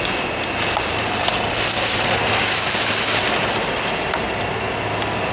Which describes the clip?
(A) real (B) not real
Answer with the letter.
A